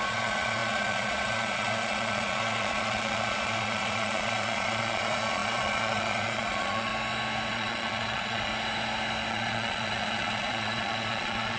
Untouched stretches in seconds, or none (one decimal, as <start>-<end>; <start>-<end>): 6.9-7.5; 8.5-9.3